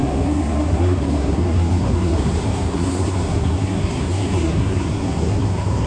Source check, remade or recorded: remade